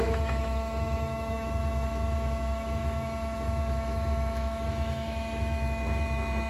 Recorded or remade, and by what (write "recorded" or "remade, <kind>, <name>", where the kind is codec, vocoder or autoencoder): remade, autoencoder, DAC-VAE